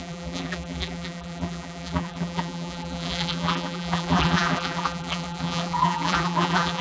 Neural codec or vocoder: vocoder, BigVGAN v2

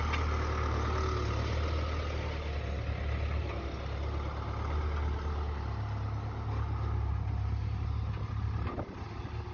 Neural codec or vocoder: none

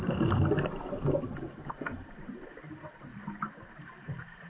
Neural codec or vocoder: vocoder, BigVGAN v2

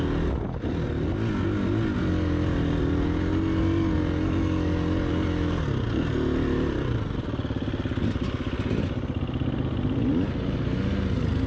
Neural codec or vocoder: none